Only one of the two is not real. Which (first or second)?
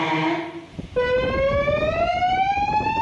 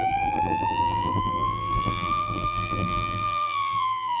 second